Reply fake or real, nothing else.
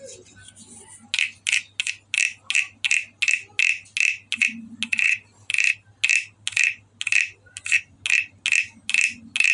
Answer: real